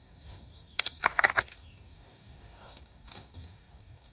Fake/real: fake